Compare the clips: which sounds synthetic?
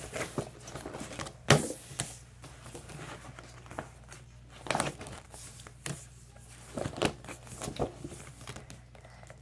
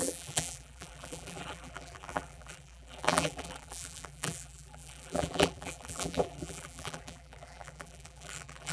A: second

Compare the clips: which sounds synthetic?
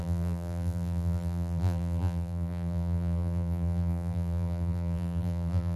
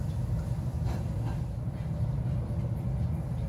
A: first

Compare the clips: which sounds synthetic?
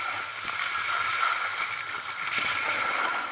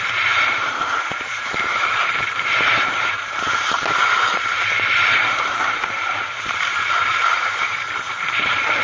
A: second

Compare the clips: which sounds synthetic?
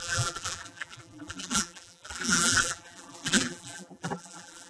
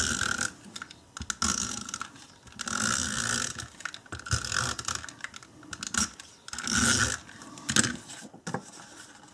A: first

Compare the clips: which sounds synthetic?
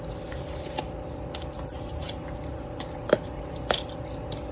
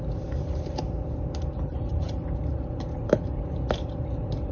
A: second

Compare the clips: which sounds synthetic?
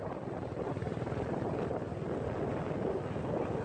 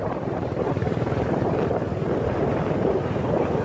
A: second